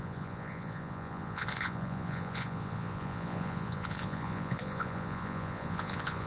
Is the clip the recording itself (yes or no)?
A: no